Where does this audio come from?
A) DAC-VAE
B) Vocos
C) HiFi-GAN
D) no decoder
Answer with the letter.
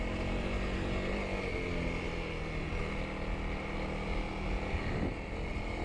D